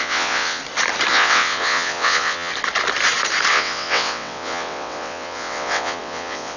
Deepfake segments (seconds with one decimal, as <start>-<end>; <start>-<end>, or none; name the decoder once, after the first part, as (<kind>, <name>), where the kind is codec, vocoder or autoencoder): 0.0-0.6 (vocoder, WaveNeXt); 1.1-2.5; 3.5-6.6